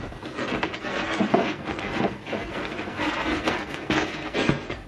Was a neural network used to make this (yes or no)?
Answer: yes